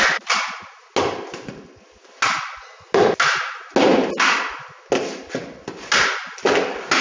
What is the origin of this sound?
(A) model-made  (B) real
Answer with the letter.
B